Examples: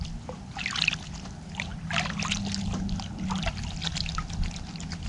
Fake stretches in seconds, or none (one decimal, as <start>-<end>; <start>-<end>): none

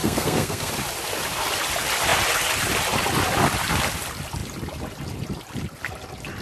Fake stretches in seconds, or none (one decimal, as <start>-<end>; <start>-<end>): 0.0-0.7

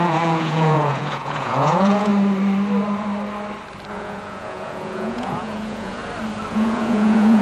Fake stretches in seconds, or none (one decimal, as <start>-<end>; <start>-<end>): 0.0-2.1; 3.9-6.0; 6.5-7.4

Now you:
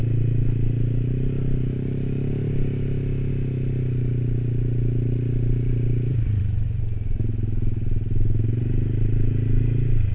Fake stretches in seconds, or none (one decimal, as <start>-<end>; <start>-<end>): 6.1-6.8

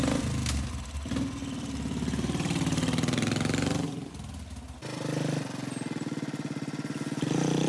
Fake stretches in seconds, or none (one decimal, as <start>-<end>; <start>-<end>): 1.4-4.1

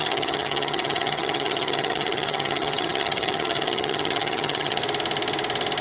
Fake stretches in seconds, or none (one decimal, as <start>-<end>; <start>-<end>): 0.0-4.8

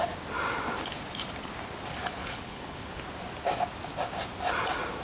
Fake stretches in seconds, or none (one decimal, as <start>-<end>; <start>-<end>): 2.2-3.0